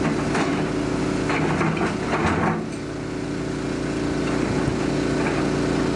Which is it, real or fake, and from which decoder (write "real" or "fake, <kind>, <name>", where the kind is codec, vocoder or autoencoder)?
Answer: real